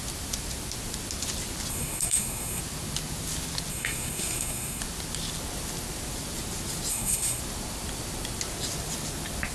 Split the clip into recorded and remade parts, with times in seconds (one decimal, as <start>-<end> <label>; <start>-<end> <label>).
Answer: 0.0-1.7 recorded; 1.7-2.6 remade; 2.6-3.7 recorded; 3.7-4.8 remade; 4.8-6.9 recorded; 6.9-7.4 remade; 7.4-9.5 recorded